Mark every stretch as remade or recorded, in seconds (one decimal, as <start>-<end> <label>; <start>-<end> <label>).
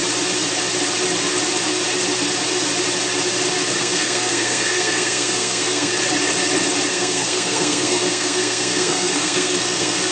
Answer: 0.0-3.8 recorded; 3.8-5.9 remade; 5.9-6.9 recorded; 6.9-10.1 remade